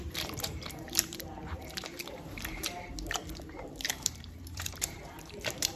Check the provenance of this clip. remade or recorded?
remade